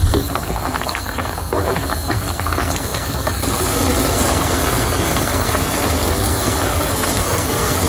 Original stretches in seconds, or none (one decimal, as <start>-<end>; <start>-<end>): none